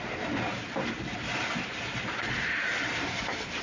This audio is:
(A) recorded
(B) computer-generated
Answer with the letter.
A